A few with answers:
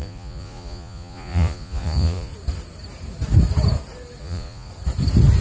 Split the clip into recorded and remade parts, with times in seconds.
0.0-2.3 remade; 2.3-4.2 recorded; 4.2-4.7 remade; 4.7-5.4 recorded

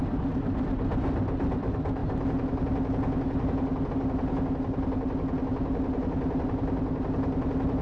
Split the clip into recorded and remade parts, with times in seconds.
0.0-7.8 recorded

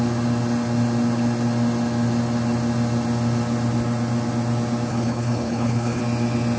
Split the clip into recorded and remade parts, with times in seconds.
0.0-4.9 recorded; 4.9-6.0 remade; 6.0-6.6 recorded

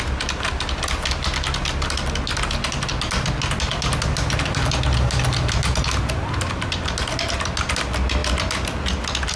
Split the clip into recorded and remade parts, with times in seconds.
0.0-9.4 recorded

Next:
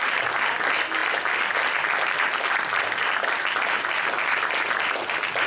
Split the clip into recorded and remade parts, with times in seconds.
0.0-5.5 recorded